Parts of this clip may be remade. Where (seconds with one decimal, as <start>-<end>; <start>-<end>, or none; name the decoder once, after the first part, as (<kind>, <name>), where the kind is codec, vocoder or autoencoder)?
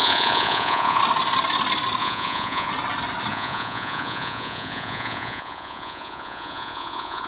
0.0-1.0 (vocoder, Vocos); 2.0-2.7; 3.3-7.3